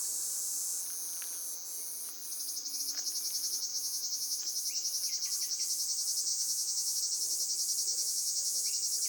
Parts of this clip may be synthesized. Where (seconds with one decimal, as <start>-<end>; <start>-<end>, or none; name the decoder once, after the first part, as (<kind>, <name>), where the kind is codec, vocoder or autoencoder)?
3.7-4.4 (vocoder, Vocos); 6.3-7.0; 7.9-8.7